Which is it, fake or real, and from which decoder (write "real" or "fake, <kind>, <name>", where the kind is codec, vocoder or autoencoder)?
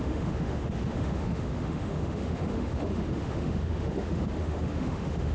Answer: fake, autoencoder, DAC-VAE